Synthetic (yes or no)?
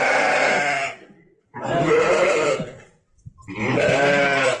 yes